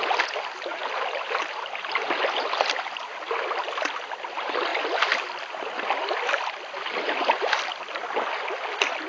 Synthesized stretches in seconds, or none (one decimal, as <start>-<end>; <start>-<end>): 0.7-2.2